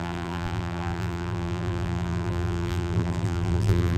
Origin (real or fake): fake